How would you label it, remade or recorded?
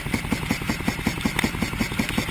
recorded